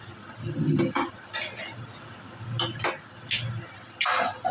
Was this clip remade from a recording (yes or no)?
no